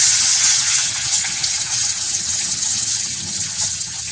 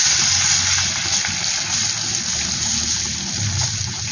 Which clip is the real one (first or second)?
second